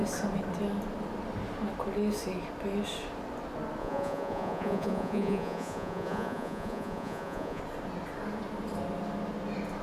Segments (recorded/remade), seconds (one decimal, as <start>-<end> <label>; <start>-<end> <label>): 0.0-3.8 recorded; 3.8-7.6 remade; 7.6-9.8 recorded